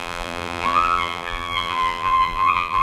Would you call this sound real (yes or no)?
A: no